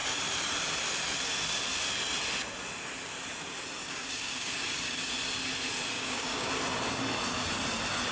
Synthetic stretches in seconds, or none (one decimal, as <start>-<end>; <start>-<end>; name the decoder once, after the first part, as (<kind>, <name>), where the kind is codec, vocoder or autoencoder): 3.8-5.1 (codec, DAC); 5.9-6.5